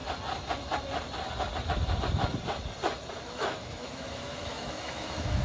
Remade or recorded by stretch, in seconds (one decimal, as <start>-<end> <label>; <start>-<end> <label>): 0.0-3.2 recorded; 3.2-5.4 remade